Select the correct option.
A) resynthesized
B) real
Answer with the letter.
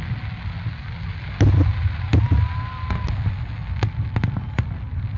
B